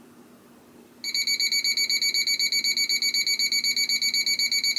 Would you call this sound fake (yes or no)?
no